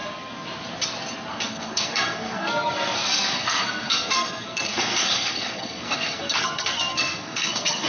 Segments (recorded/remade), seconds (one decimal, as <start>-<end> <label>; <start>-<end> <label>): 0.0-1.3 recorded; 1.3-7.9 remade